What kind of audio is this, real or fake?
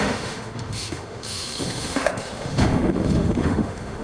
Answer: fake